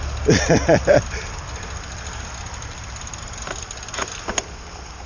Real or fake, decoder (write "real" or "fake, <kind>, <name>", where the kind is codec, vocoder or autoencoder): real